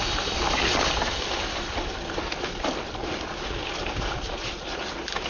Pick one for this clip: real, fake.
real